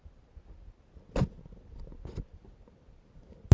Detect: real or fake real